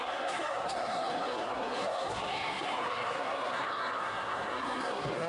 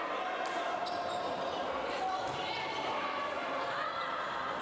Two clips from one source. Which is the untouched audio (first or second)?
second